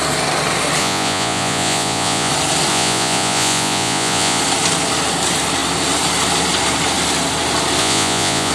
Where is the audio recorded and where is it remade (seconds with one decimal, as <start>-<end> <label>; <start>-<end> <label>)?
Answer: 0.0-0.8 recorded; 0.8-2.3 remade; 2.3-2.7 recorded; 2.7-4.4 remade; 4.4-7.8 recorded; 7.8-8.5 remade